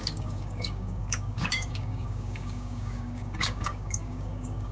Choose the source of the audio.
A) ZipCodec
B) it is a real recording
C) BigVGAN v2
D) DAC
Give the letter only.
D